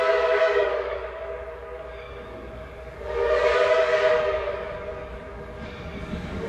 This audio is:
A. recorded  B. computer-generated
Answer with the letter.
B